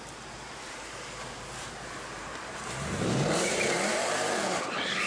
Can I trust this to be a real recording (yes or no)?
no